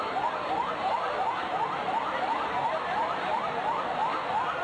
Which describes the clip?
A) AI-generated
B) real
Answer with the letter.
B